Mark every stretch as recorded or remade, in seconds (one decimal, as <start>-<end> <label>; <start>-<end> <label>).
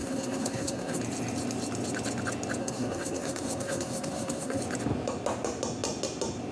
0.0-1.0 remade; 1.0-2.6 recorded; 2.6-4.6 remade; 4.6-6.5 recorded